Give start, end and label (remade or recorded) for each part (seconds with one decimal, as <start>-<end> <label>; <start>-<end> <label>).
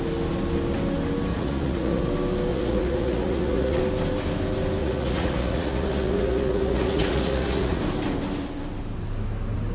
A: 0.0-1.3 recorded; 1.3-2.1 remade; 2.1-2.5 recorded; 2.5-3.8 remade; 3.8-4.8 recorded; 4.8-7.8 remade; 7.8-9.7 recorded